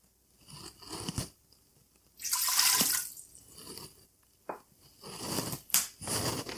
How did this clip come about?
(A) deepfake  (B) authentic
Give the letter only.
B